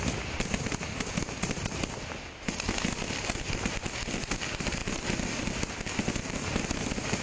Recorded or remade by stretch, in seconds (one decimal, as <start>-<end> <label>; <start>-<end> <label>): 0.0-7.2 recorded